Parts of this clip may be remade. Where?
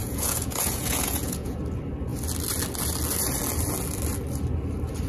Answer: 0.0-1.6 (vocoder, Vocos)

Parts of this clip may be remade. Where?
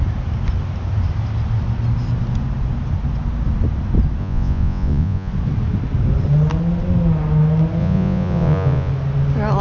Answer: 4.2-5.3 (vocoder, Vocos); 7.8-8.9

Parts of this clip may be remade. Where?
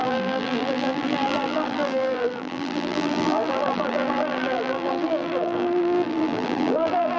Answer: 0.0-7.2 (vocoder, BigVGAN v2)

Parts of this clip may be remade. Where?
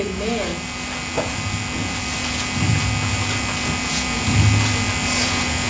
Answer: 0.0-0.5 (vocoder, Vocos); 3.9-4.3; 5.2-5.7